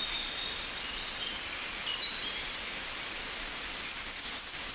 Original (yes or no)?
no